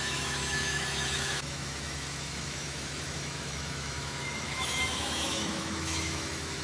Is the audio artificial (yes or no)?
yes